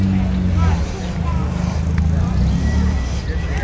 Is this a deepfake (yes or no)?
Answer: no